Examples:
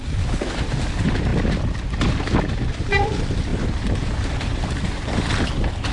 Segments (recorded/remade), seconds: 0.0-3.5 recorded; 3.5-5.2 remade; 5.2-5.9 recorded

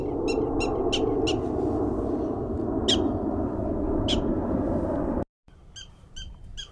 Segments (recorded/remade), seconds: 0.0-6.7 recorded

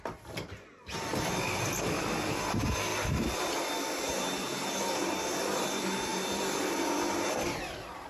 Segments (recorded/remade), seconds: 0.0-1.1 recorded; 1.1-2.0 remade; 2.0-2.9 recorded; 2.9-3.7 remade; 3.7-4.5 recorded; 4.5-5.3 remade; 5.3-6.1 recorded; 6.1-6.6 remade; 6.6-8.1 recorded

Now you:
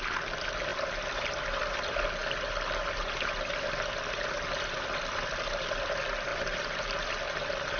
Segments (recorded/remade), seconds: 0.0-2.2 recorded; 2.2-3.3 remade; 3.3-6.3 recorded; 6.3-7.2 remade; 7.2-7.8 recorded

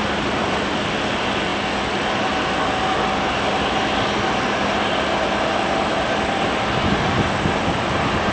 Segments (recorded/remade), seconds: 0.0-1.5 remade; 1.5-6.3 recorded; 6.3-8.3 remade